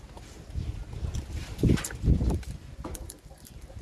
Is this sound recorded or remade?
remade